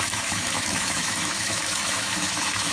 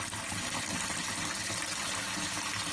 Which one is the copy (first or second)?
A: first